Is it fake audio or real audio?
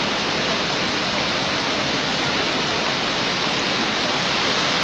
real